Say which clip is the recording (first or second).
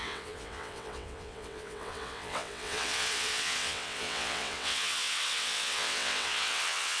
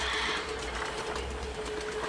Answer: second